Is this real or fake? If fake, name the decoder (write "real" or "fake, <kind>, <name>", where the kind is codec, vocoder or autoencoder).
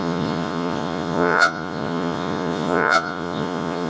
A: fake, vocoder, Vocos